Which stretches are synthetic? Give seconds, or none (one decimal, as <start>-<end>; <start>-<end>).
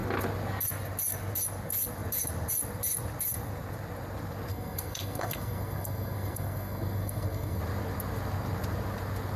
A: 4.5-7.6